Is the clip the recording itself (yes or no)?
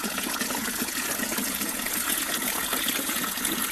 no